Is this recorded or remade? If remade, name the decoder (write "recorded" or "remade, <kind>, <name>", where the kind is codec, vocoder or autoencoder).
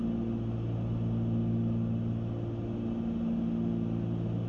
recorded